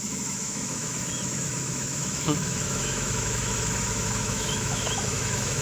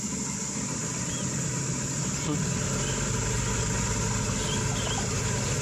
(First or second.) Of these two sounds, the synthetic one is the first